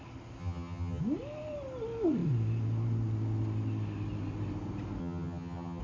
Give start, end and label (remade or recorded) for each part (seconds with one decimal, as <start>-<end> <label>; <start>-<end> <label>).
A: 0.0-0.4 recorded; 0.4-1.0 remade; 1.0-5.0 recorded; 5.0-5.8 remade